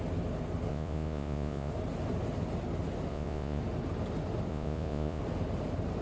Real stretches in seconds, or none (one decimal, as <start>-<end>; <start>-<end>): 0.0-0.7; 1.7-3.1; 3.6-4.5; 5.2-6.0